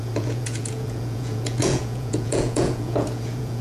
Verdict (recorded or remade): remade